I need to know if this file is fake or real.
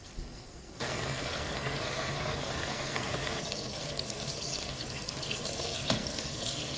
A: fake